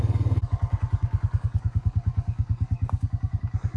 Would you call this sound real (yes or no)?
no